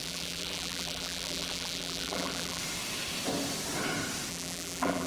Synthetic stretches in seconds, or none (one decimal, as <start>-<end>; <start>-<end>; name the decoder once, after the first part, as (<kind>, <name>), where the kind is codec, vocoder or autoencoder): 0.0-2.6 (vocoder, BigVGAN v2); 4.3-5.1